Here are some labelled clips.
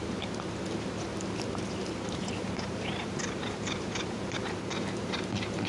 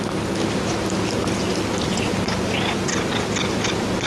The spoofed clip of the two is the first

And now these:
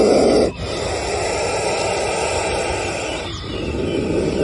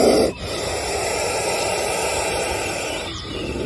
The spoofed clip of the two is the second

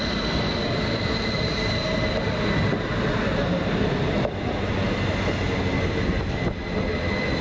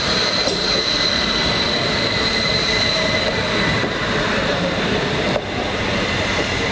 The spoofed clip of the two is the second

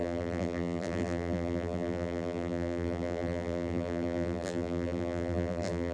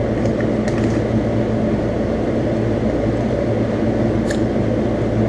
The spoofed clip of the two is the first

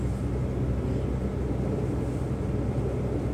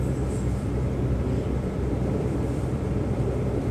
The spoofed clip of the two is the second